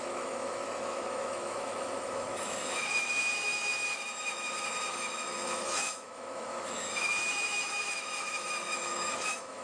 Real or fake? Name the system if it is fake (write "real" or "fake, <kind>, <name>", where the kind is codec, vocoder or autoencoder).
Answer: fake, autoencoder, DAC-VAE